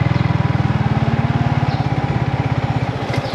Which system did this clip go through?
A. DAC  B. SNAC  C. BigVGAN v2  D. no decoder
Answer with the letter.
D